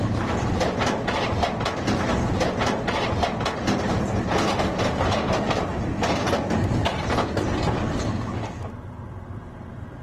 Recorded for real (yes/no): yes